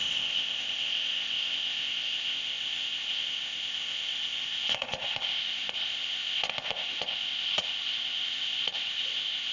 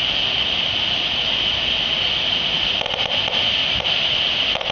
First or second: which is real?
second